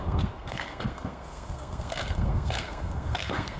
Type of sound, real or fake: fake